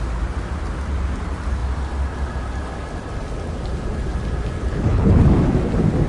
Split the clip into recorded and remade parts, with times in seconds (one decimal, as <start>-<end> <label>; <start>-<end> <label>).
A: 0.0-4.7 recorded; 4.7-5.2 remade; 5.2-6.1 recorded